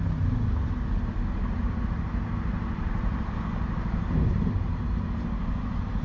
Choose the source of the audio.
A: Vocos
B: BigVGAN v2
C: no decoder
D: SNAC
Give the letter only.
C